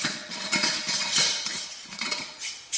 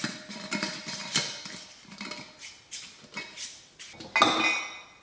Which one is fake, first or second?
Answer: first